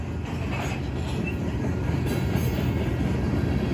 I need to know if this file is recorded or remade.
recorded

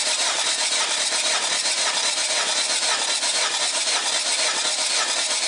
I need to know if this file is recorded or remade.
recorded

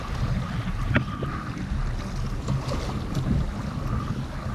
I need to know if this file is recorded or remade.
recorded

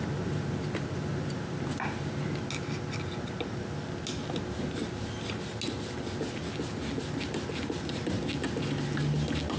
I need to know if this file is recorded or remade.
recorded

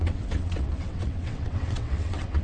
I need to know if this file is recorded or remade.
remade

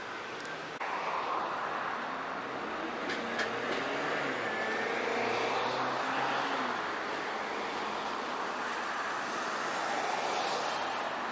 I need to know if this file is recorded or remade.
recorded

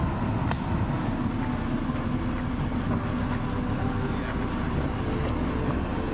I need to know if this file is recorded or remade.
recorded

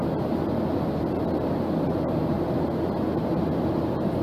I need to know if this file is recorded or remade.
recorded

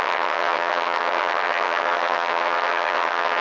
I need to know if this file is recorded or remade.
remade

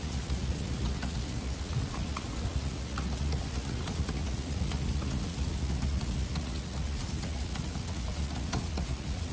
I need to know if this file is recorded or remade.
remade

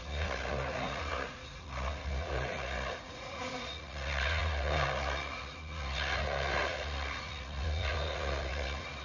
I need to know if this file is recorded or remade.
remade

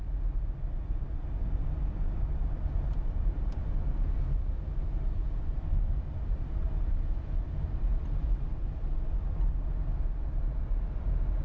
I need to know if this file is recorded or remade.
recorded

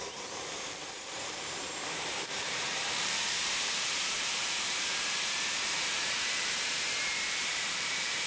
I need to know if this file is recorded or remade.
remade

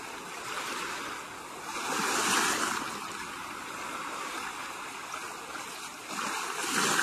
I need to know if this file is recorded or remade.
recorded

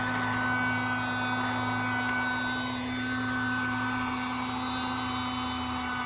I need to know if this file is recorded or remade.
remade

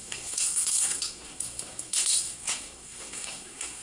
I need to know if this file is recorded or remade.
remade